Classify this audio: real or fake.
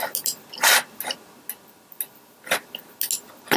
real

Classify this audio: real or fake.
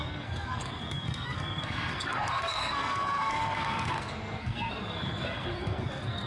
fake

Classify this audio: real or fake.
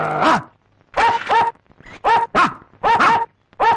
real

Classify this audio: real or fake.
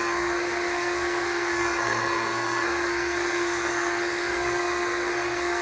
fake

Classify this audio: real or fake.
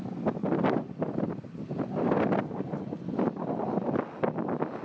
real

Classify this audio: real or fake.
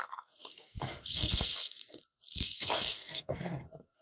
fake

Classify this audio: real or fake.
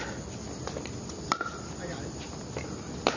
real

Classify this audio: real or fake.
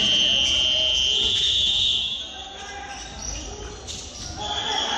real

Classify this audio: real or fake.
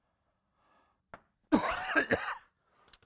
real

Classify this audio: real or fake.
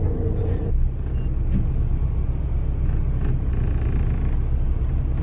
real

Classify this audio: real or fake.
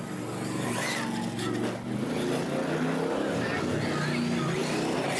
real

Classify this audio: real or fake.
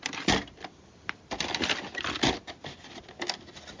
real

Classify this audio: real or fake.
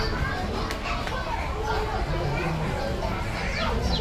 real